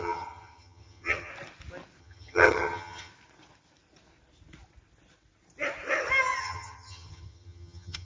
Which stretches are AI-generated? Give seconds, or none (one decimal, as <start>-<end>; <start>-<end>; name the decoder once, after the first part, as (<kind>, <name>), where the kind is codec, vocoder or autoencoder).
0.0-1.3 (vocoder, HiFi-GAN); 2.0-3.1; 6.4-8.0